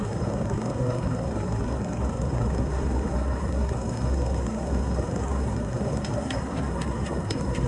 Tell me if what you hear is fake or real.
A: fake